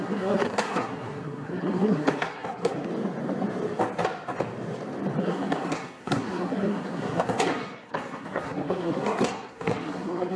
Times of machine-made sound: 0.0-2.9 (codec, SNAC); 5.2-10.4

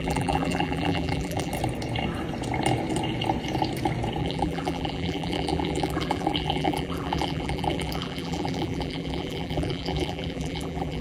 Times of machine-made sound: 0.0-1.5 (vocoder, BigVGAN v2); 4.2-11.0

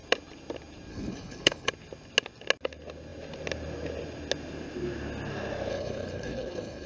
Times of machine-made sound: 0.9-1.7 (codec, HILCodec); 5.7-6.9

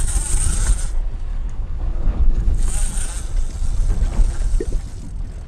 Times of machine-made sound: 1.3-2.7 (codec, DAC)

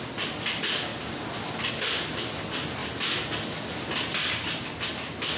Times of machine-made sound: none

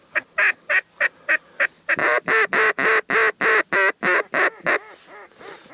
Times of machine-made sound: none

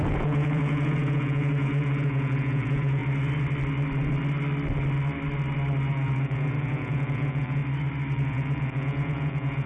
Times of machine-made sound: 0.0-3.0 (vocoder, Vocos); 5.9-7.6; 8.1-9.7